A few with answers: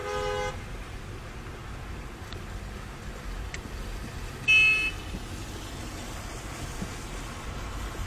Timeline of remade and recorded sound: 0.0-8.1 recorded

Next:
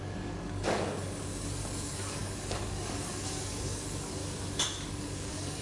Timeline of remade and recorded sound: 0.0-4.2 remade; 4.2-4.9 recorded; 4.9-5.6 remade

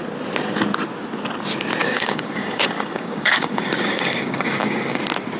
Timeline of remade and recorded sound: 0.0-1.8 recorded; 1.8-5.0 remade; 5.0-5.4 recorded

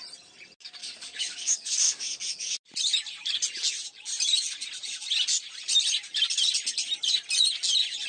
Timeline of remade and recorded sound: 0.0-0.8 recorded; 0.8-2.5 remade; 2.5-8.1 recorded

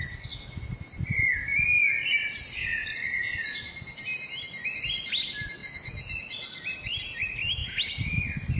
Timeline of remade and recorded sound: 0.0-8.6 recorded